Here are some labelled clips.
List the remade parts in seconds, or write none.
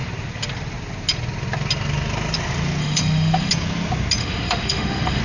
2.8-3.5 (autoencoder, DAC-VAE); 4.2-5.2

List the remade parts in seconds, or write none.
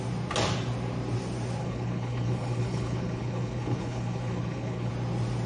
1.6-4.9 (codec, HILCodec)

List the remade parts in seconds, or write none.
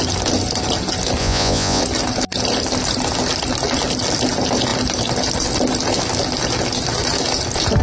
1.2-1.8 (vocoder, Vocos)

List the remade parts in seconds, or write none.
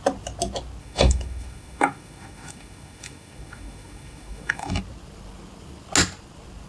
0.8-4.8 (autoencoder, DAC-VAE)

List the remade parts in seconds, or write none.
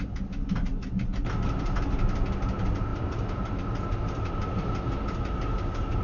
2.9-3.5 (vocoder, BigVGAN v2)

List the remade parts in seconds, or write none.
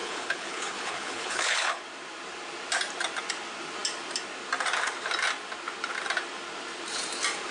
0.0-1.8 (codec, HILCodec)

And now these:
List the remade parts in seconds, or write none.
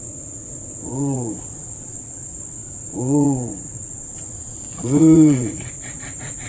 0.0-6.5 (vocoder, Vocos)